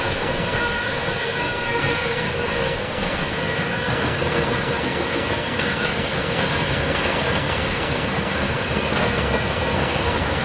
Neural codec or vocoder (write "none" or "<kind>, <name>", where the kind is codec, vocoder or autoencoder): codec, SNAC